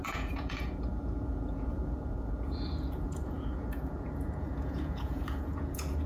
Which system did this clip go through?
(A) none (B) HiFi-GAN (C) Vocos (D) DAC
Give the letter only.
C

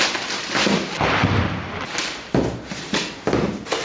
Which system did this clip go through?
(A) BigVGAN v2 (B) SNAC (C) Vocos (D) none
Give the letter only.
D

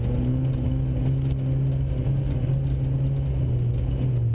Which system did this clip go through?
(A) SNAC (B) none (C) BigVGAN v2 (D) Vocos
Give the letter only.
B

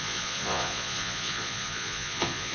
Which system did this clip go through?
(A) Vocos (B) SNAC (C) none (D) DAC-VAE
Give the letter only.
A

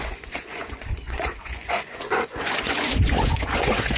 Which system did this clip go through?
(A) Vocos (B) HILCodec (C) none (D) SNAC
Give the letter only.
A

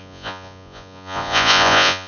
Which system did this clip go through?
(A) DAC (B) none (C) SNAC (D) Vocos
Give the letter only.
D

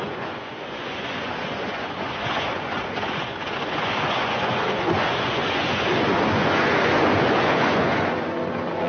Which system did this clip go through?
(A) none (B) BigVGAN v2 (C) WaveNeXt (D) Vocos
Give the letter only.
D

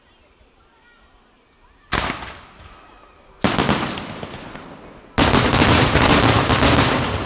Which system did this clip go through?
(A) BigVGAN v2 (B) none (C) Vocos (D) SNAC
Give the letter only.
B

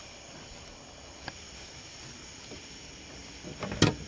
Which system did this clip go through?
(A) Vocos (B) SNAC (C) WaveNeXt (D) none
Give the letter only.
D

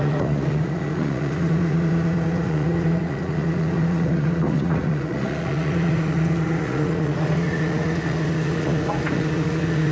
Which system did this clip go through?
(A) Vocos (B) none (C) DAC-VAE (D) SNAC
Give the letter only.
A